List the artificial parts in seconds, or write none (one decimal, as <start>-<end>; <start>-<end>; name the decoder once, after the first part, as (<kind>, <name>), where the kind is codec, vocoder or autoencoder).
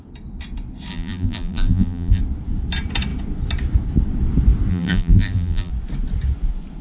0.9-2.2 (vocoder, BigVGAN v2); 4.7-5.7